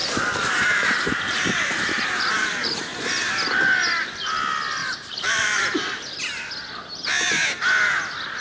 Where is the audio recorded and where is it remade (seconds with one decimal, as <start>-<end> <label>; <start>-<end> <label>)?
0.0-3.1 remade; 3.1-4.8 recorded; 4.8-6.2 remade; 6.2-8.4 recorded